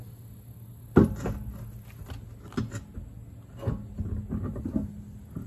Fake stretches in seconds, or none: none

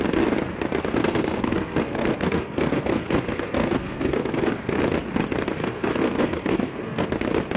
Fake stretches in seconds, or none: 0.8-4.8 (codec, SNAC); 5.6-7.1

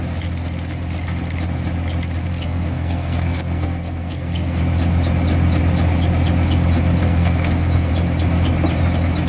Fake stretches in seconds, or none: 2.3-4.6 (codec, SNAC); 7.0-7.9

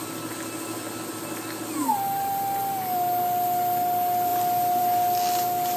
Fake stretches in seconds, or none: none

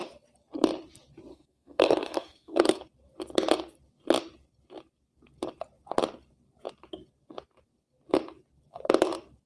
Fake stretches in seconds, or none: 1.3-2.8 (codec, SNAC)

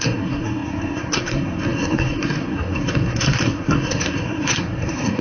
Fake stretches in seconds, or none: 0.0-5.2 (codec, SNAC)